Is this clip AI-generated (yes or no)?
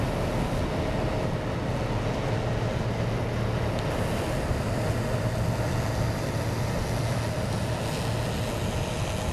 no